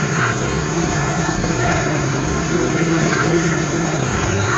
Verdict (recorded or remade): remade